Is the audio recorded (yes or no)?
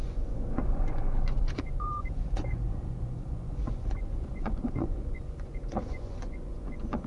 no